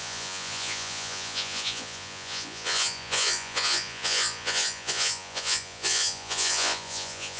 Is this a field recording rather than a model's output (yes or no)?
no